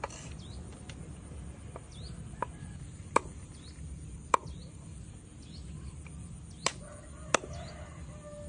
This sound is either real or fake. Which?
real